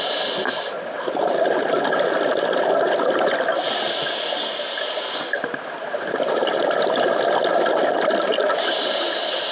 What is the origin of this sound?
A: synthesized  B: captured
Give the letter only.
B